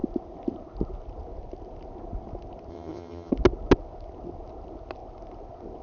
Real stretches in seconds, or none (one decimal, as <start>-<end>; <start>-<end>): 0.0-2.7; 3.3-5.8